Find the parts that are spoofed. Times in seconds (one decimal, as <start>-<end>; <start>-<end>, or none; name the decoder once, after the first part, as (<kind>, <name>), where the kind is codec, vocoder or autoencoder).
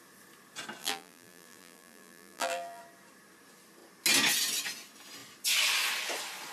0.8-2.8 (vocoder, BigVGAN v2)